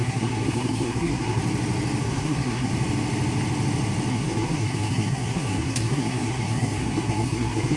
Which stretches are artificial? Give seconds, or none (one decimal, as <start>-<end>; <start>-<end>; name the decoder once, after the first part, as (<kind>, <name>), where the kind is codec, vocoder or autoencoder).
0.0-1.4 (codec, SNAC); 2.0-2.7; 4.1-7.8